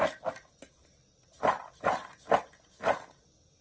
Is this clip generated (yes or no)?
no